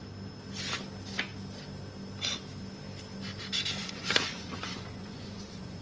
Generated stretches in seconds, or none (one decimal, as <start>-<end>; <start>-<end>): 3.8-5.8